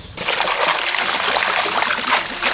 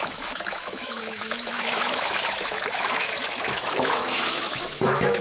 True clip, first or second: first